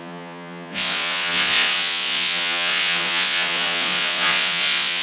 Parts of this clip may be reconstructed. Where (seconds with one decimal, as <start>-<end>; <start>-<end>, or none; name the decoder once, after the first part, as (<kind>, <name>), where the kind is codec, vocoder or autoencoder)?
0.0-5.0 (vocoder, Vocos)